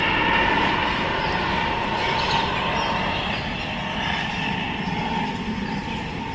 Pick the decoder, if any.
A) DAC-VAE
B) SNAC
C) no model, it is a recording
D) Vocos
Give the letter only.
C